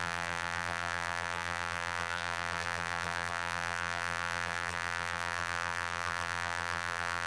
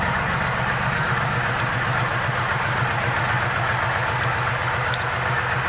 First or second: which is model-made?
first